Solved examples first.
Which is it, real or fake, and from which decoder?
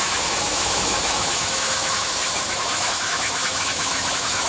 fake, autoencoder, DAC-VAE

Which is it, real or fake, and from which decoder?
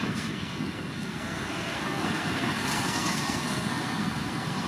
fake, codec, SNAC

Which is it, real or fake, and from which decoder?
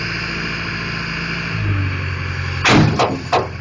real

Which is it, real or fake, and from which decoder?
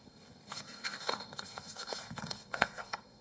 fake, codec, SNAC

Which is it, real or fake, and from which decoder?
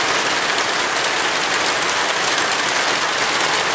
real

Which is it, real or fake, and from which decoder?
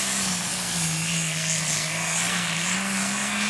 fake, codec, SNAC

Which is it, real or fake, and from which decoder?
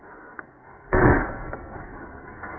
fake, codec, SNAC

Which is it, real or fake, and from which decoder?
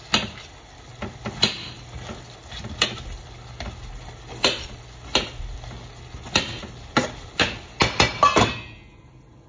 real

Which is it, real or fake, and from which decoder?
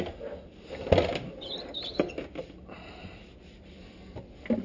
real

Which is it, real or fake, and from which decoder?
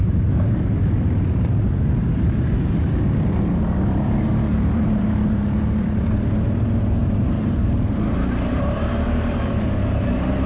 fake, vocoder, BigVGAN v2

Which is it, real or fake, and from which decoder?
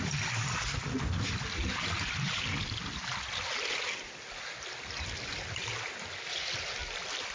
real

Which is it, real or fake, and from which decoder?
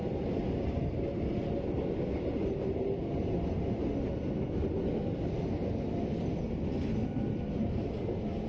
real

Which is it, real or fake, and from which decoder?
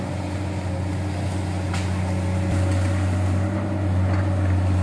real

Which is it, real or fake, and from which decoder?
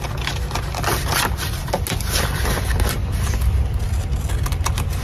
real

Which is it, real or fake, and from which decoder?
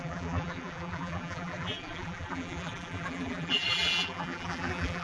fake, vocoder, BigVGAN v2